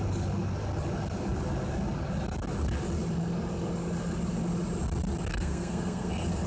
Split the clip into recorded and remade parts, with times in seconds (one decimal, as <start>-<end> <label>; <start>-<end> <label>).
0.0-5.3 recorded; 5.3-6.1 remade; 6.1-6.5 recorded